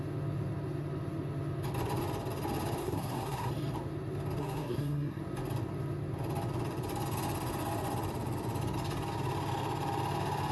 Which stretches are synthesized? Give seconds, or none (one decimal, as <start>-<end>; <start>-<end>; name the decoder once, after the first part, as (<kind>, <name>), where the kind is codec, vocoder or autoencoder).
2.8-3.5 (codec, SNAC); 4.4-5.2